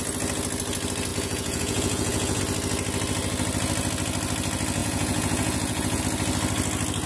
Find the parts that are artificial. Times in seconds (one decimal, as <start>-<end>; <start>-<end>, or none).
1.1-2.4; 4.8-6.0